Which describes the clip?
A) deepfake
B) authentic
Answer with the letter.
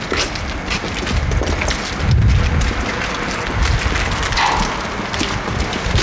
B